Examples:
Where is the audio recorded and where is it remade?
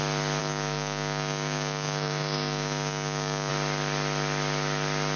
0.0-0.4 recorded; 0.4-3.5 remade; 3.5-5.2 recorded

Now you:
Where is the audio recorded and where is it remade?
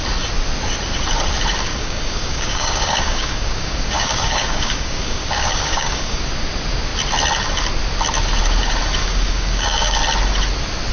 0.0-1.7 recorded; 1.7-6.3 remade; 6.3-9.0 recorded; 9.0-10.0 remade; 10.0-10.9 recorded